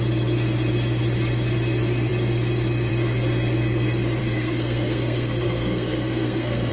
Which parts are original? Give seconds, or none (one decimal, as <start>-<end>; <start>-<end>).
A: 0.0-4.2